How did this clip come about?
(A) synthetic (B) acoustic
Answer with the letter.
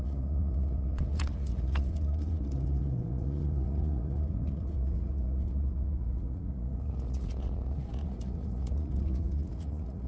A